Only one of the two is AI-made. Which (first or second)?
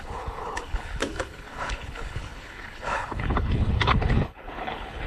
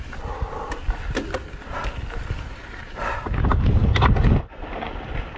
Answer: first